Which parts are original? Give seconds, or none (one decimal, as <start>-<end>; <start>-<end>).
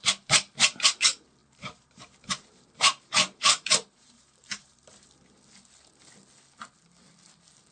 0.0-1.4; 5.4-7.7